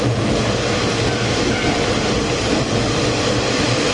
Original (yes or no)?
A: yes